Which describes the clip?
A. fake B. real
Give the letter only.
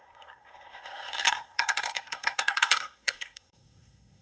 A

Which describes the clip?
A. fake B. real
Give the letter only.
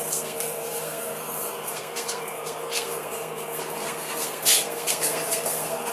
A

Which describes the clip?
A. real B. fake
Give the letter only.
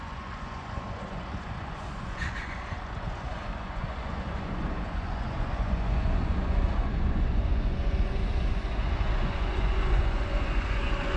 B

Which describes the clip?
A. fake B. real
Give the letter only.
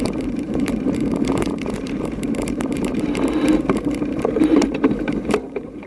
A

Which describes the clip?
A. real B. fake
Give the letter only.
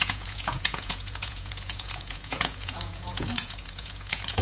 B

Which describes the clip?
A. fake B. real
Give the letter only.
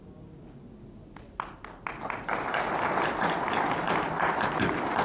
B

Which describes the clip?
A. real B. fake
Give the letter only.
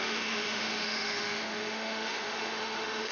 B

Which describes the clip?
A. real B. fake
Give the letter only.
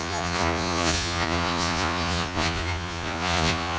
B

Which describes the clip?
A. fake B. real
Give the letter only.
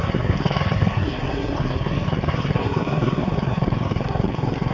A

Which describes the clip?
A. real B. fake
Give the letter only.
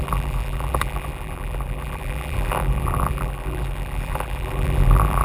B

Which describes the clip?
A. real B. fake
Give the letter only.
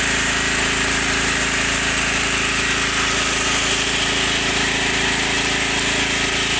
A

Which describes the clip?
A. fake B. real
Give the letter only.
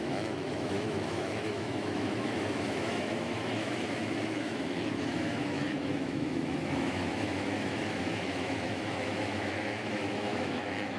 A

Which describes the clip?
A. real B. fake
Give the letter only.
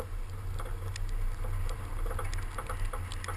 A